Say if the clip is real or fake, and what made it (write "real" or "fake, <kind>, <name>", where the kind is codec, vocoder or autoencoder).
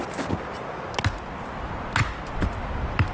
real